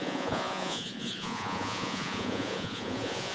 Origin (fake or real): fake